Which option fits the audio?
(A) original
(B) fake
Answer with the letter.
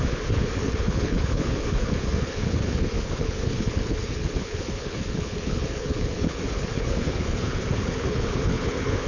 B